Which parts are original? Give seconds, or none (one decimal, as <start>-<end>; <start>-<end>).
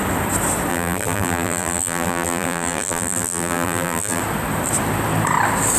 0.0-0.7; 4.2-5.8